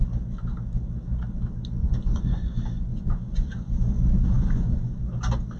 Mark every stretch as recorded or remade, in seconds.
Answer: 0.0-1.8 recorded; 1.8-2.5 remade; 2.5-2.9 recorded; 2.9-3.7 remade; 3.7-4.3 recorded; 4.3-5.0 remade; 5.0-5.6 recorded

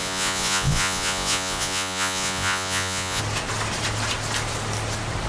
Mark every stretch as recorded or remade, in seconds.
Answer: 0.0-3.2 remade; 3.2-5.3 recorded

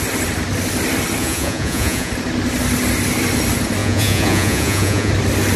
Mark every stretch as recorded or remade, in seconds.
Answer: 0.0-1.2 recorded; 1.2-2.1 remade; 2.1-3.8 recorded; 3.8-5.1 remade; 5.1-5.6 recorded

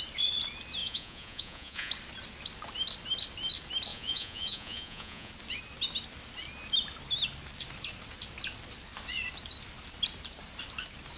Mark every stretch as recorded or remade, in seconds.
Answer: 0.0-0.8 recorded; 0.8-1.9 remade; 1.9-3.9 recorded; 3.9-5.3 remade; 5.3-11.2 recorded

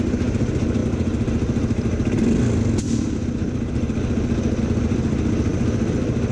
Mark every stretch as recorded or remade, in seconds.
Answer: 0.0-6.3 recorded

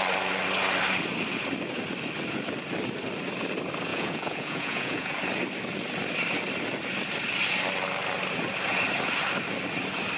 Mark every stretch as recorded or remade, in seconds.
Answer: 0.0-3.9 recorded; 3.9-5.2 remade; 5.2-10.2 recorded

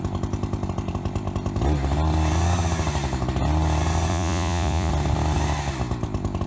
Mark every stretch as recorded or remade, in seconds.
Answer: 0.0-4.1 recorded; 4.1-4.9 remade; 4.9-6.5 recorded

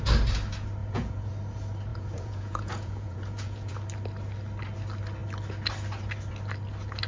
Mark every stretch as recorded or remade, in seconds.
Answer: 0.0-0.8 recorded; 0.8-1.3 remade; 1.3-1.9 recorded; 1.9-3.7 remade; 3.7-7.1 recorded